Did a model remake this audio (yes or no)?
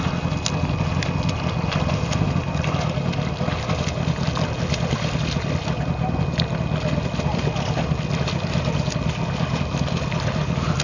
no